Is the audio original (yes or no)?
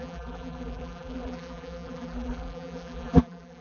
no